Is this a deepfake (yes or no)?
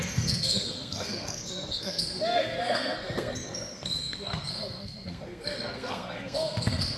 yes